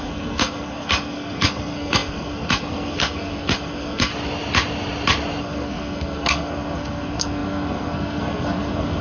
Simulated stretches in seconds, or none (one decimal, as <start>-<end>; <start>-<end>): 0.0-4.1; 5.4-9.0